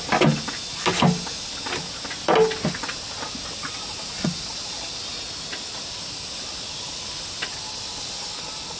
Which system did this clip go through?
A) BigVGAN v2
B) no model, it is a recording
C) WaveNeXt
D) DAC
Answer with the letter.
B